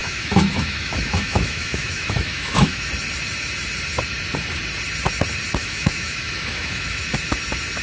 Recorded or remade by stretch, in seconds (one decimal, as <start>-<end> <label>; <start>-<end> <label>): 0.0-2.9 remade; 2.9-5.6 recorded; 5.6-7.0 remade; 7.0-7.8 recorded